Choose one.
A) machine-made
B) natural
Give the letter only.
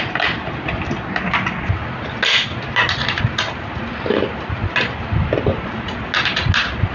B